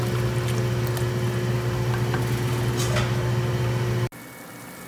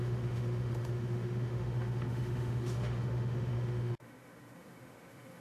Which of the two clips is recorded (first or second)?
first